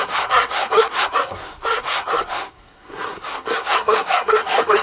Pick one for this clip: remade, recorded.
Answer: remade